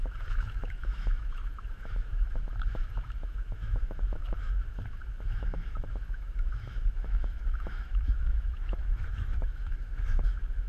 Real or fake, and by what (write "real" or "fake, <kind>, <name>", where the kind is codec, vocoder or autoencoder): fake, autoencoder, DAC-VAE